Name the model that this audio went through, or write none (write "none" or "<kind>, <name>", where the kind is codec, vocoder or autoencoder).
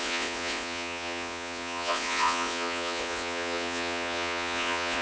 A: vocoder, Vocos